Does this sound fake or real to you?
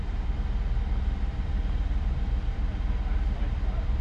fake